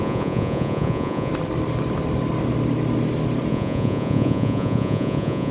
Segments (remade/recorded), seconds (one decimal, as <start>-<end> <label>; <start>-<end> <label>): 0.0-1.3 remade; 1.3-3.5 recorded; 3.5-5.5 remade